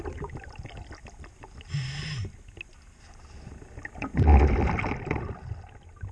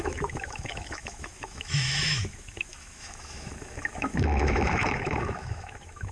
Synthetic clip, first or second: second